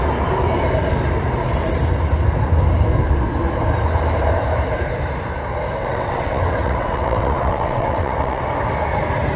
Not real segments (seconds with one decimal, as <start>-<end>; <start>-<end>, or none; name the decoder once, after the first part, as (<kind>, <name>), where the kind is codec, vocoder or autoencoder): 5.8-8.4 (vocoder, WaveNeXt)